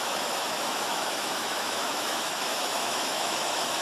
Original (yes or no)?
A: no